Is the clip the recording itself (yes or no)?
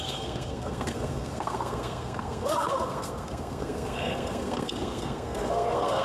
no